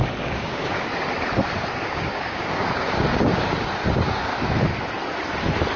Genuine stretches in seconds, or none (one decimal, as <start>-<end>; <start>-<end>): 0.9-1.7; 4.3-5.8